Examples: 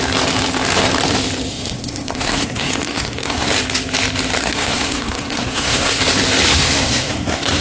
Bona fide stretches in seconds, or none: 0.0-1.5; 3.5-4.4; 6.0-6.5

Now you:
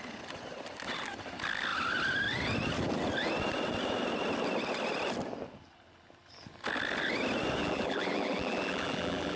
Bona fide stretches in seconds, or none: 0.0-7.6

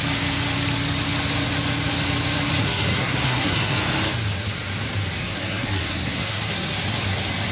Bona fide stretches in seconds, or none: 0.0-2.6; 3.8-5.2; 6.4-7.5

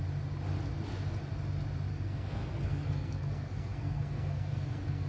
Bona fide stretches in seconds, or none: 0.0-1.9

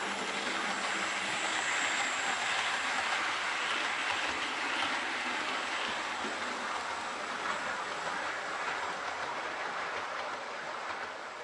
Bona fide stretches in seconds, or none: 0.0-11.4